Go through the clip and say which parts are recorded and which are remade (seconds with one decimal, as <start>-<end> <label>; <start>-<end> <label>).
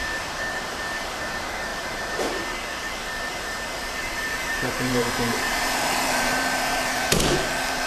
0.0-7.9 remade